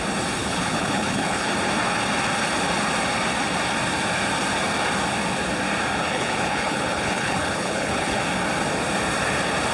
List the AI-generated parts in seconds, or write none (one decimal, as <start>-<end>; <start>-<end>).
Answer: 0.4-1.5; 6.0-8.2